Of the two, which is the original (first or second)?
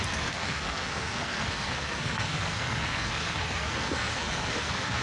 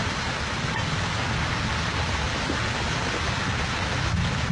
second